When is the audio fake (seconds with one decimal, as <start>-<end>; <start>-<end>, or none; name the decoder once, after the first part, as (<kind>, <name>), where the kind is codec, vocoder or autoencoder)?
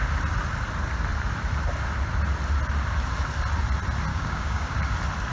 4.1-4.8 (codec, DAC)